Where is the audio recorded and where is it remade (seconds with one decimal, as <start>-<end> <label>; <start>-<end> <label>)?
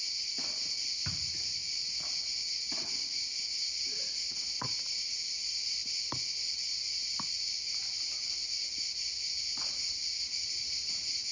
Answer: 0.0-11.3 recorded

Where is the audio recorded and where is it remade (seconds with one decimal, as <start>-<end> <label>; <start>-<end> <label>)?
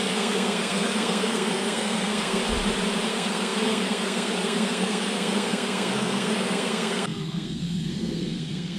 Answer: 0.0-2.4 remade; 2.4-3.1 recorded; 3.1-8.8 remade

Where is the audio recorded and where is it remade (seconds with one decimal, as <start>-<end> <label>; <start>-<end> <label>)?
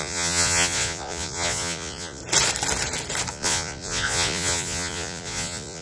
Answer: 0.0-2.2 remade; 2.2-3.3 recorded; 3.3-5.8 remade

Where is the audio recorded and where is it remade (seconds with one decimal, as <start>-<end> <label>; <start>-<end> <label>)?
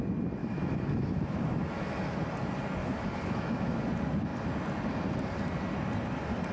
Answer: 0.0-0.4 recorded; 0.4-2.2 remade; 2.2-2.8 recorded; 2.8-3.8 remade; 3.8-6.5 recorded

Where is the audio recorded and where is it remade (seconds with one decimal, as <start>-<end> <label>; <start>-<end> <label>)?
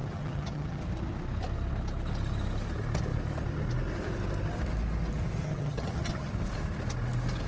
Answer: 0.0-0.8 remade; 0.8-5.4 recorded; 5.4-6.3 remade; 6.3-7.5 recorded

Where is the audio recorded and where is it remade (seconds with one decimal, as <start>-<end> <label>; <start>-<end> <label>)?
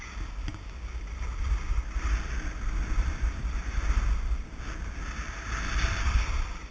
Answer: 0.0-6.7 recorded